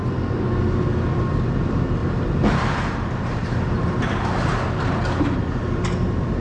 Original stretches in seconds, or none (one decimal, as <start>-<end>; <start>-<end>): 0.0-2.0; 5.8-6.4